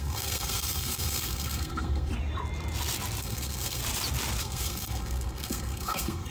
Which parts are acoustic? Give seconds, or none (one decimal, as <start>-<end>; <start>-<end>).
2.1-3.2; 3.8-4.4